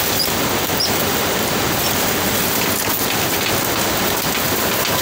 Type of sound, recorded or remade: recorded